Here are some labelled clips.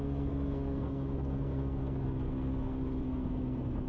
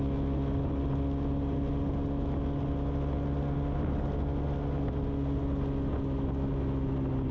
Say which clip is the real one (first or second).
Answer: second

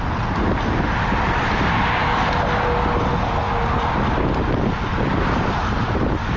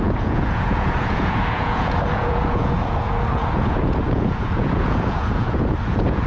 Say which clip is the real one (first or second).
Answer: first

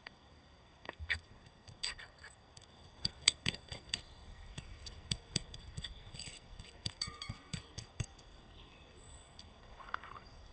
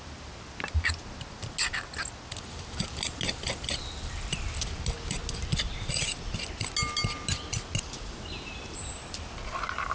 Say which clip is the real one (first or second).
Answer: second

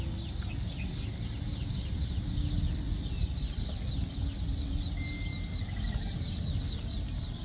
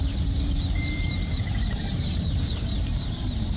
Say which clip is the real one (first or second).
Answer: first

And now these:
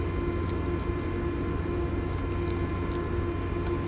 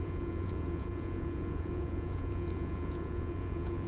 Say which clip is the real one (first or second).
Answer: first